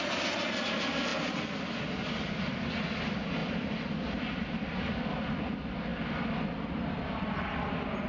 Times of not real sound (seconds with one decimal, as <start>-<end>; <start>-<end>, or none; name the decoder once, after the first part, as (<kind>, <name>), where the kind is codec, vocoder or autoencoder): none